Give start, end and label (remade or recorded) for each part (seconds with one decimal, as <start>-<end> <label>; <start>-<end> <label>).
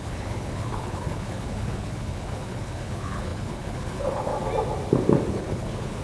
0.0-4.3 remade; 4.3-5.3 recorded; 5.3-6.0 remade